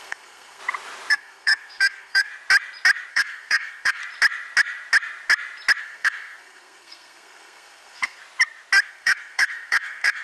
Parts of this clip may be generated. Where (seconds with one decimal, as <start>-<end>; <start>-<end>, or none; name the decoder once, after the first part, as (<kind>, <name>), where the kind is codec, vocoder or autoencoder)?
0.0-0.6 (codec, SNAC); 1.1-2.3; 3.1-4.0; 5.8-8.2; 8.8-10.2